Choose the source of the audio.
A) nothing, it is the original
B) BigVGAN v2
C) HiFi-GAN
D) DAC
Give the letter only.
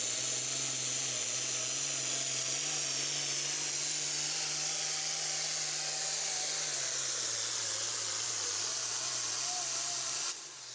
A